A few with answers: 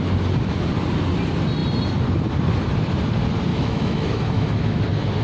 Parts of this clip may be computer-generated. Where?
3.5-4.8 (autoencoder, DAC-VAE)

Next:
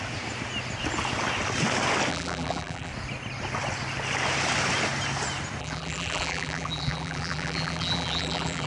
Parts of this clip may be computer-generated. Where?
2.1-2.9 (vocoder, BigVGAN v2); 5.6-8.7